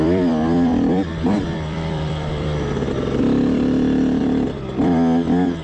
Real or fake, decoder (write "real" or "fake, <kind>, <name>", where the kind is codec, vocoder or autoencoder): fake, vocoder, BigVGAN v2